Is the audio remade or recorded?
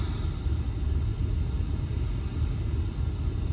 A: recorded